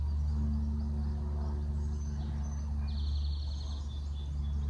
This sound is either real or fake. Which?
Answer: real